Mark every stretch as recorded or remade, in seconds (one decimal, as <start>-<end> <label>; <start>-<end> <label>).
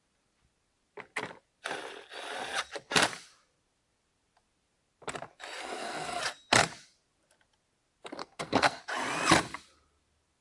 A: 0.0-5.6 recorded; 5.6-6.2 remade; 6.2-8.2 recorded; 8.2-8.8 remade; 8.8-10.4 recorded